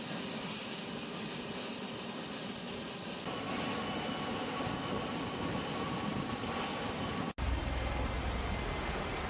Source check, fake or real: real